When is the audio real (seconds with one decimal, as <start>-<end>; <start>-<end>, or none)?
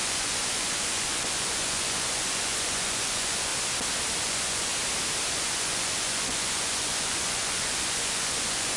3.5-4.2; 4.7-5.3